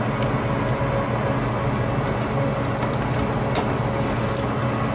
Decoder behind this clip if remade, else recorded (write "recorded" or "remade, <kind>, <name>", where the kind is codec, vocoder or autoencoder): recorded